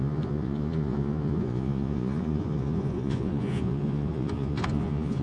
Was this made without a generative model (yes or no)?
no